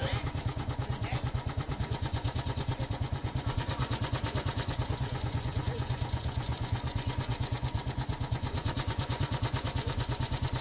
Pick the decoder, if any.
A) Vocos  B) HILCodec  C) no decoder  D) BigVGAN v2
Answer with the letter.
A